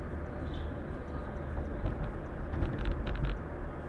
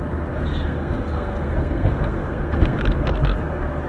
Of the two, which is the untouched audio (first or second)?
first